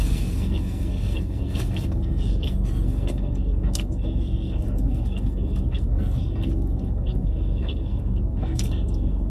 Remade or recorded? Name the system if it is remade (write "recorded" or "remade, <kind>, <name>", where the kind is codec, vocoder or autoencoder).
remade, codec, SNAC